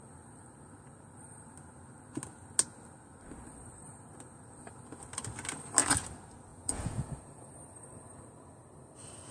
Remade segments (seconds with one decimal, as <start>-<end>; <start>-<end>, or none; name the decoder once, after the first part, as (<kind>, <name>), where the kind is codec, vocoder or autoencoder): 6.5-7.5 (vocoder, Vocos)